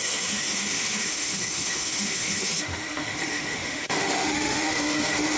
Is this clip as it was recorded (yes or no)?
no